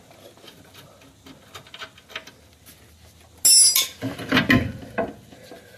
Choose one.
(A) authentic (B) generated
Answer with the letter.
A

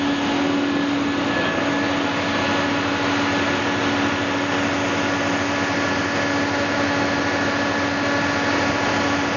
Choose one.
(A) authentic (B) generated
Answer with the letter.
A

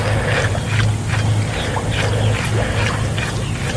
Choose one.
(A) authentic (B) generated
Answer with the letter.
A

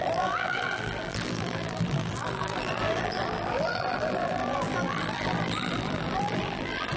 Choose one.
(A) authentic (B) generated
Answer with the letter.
B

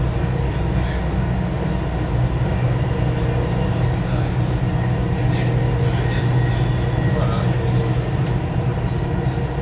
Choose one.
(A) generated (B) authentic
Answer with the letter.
B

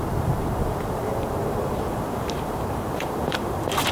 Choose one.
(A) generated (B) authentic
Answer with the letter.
A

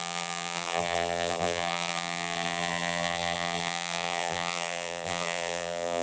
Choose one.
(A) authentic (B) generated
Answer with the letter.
B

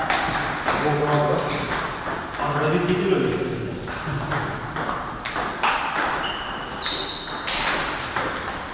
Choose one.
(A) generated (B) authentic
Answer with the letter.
B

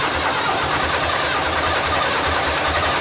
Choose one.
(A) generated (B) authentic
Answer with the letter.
A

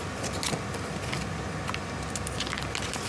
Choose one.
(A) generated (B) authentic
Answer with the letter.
B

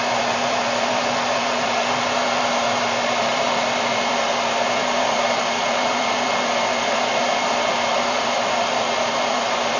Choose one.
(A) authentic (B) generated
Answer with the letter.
B